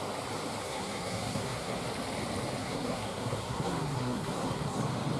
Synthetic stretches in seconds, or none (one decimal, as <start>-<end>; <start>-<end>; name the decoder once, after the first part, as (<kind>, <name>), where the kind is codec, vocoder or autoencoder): 0.6-1.8 (codec, SNAC); 2.6-4.8